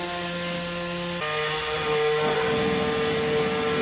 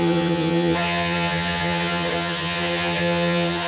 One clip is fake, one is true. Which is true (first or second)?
first